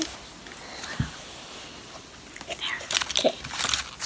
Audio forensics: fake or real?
real